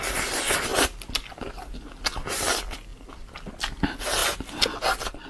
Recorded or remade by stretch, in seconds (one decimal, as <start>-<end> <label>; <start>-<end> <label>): 0.0-5.3 recorded